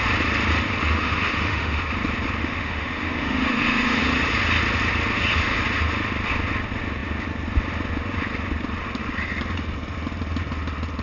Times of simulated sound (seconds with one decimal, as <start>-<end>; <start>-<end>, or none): 0.8-1.8; 2.4-4.0